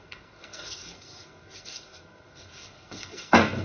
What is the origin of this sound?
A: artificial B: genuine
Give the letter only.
A